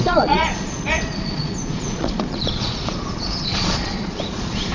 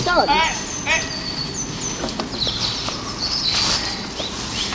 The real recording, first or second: second